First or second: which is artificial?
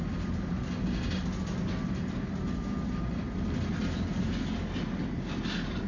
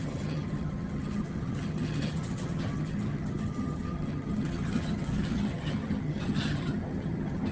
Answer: second